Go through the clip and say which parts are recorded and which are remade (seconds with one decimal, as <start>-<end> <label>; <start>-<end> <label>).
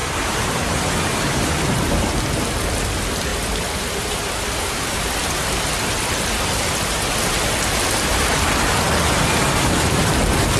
0.0-2.2 remade; 2.2-3.3 recorded; 3.3-5.1 remade; 5.1-10.6 recorded